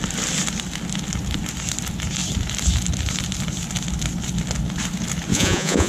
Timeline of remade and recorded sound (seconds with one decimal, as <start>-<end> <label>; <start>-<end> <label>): 0.0-5.3 recorded; 5.3-5.9 remade